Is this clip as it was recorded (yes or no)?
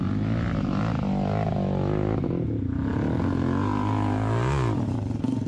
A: yes